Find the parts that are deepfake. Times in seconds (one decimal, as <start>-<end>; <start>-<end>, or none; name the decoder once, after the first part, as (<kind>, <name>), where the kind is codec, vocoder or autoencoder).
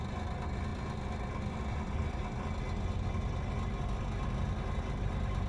none